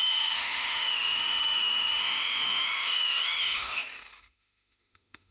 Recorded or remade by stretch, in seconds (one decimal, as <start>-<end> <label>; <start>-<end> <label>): 0.0-5.3 remade